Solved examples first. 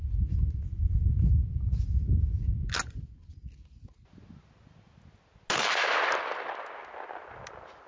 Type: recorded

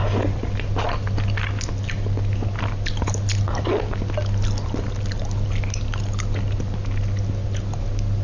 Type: recorded